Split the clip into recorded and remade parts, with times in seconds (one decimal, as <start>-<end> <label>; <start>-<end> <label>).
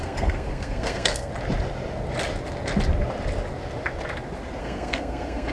0.0-1.3 remade; 1.3-4.6 recorded; 4.6-5.5 remade